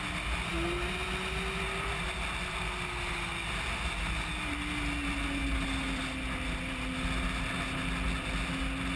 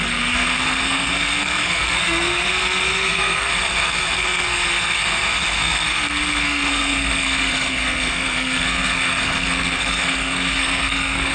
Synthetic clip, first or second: second